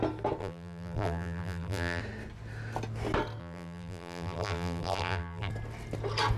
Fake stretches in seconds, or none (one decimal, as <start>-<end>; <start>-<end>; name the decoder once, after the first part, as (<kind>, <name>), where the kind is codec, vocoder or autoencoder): 0.4-2.0 (vocoder, BigVGAN v2); 3.4-5.5